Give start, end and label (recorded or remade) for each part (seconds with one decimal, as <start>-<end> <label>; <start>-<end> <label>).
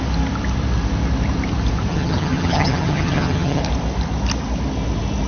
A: 0.0-1.9 recorded; 1.9-3.6 remade; 3.6-5.3 recorded